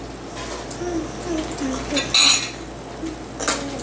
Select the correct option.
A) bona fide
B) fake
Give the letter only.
A